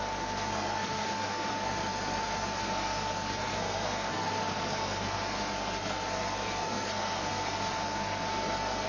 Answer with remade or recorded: remade